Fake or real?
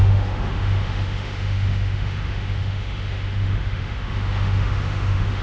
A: fake